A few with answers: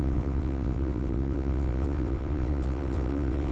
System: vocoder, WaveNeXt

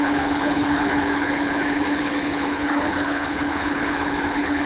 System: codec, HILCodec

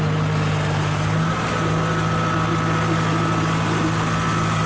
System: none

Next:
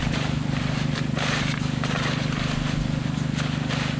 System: none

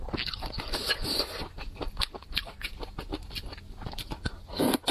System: none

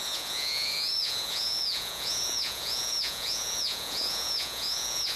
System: vocoder, Vocos